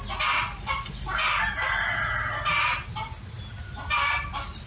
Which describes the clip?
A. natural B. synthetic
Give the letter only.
A